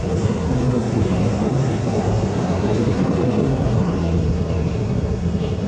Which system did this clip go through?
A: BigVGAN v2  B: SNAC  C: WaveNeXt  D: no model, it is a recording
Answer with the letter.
B